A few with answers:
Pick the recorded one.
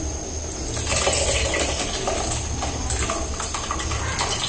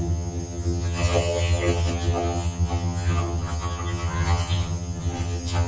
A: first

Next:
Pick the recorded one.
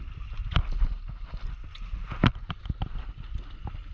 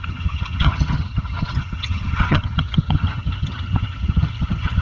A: first